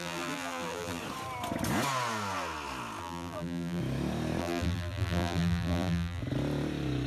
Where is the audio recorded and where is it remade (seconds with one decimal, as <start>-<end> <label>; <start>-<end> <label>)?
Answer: 0.0-1.0 remade; 1.0-3.0 recorded; 3.0-3.8 remade; 3.8-4.4 recorded; 4.4-6.2 remade; 6.2-7.1 recorded